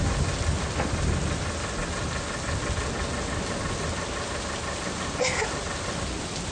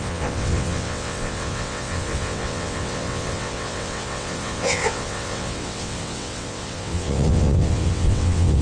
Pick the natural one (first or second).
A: first